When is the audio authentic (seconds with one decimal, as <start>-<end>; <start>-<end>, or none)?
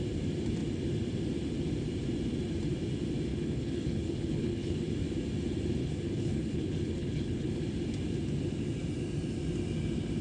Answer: 0.0-3.3; 4.9-5.8; 7.6-10.2